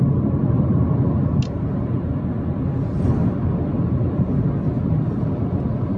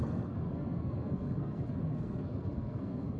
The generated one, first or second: second